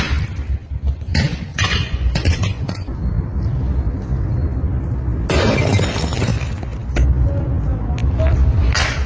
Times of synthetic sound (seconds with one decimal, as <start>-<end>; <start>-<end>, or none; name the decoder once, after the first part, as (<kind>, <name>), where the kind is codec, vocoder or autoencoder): 1.5-3.0 (vocoder, Vocos)